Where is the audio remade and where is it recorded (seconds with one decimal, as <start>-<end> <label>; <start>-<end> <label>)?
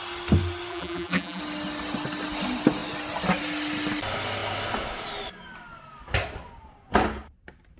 0.0-0.7 recorded; 0.7-1.4 remade; 1.4-7.8 recorded